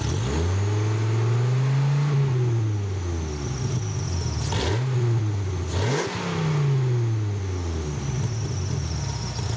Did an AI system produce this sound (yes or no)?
no